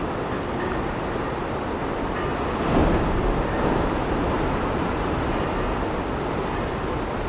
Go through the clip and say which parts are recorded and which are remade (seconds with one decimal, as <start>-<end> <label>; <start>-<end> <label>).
0.0-2.8 recorded; 2.8-5.0 remade; 5.0-7.3 recorded